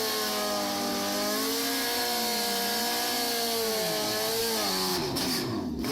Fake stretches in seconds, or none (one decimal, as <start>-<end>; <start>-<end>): 4.9-5.9